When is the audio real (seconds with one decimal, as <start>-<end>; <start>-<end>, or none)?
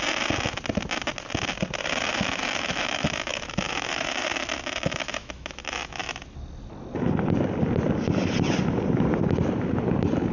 0.0-2.1; 6.1-10.3